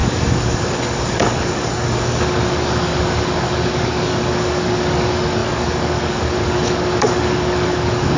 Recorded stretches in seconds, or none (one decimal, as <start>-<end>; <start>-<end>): none